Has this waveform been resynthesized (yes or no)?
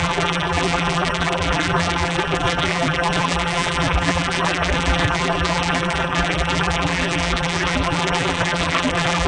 yes